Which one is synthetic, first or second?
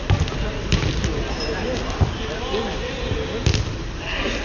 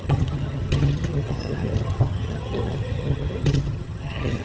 second